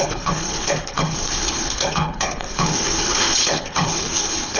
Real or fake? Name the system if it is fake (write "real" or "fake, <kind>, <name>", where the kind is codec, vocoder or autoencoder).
fake, codec, HILCodec